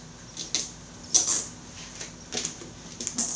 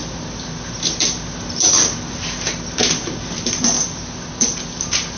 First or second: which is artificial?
second